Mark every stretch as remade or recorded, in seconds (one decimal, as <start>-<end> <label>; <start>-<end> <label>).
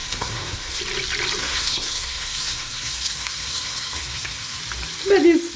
0.0-0.8 remade; 0.8-1.4 recorded; 1.4-4.6 remade; 4.6-5.6 recorded